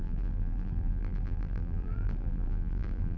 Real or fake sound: fake